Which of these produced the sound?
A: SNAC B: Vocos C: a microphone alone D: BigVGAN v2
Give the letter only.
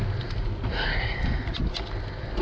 C